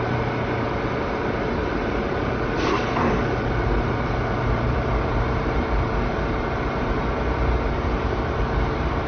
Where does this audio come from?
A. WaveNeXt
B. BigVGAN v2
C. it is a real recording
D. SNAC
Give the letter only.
B